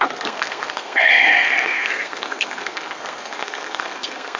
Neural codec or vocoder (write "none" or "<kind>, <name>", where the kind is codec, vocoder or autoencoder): codec, SNAC